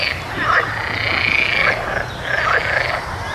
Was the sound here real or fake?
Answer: real